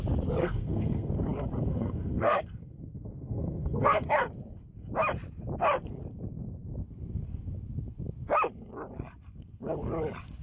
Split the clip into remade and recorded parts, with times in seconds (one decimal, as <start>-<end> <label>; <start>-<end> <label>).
0.0-0.4 recorded; 0.4-1.1 remade; 1.1-1.7 recorded; 1.7-4.1 remade; 4.1-10.4 recorded